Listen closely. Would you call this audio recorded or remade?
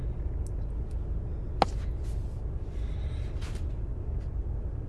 recorded